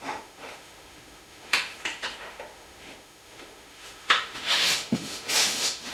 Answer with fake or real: fake